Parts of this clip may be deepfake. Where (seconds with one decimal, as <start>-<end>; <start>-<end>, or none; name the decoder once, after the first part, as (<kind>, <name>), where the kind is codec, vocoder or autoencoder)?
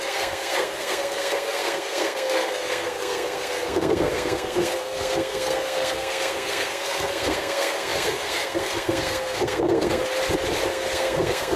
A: 0.0-10.0 (codec, SNAC); 10.7-11.6